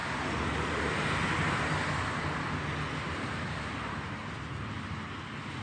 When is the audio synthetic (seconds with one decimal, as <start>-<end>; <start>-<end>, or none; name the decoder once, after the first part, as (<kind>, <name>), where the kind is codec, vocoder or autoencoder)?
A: none